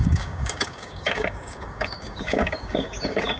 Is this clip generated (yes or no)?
yes